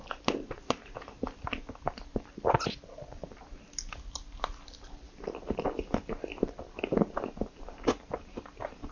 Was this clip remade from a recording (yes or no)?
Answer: no